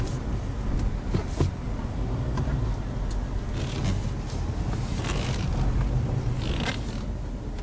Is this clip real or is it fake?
real